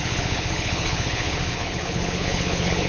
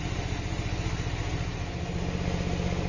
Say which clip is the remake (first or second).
first